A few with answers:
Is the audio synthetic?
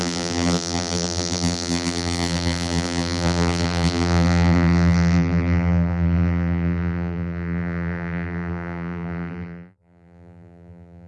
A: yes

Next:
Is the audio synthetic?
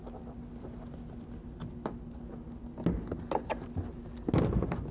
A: no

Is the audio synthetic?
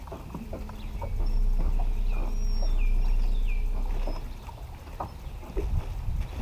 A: no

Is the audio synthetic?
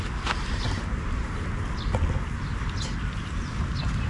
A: no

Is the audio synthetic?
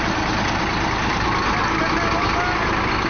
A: no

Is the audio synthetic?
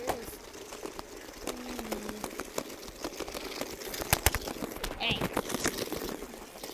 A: no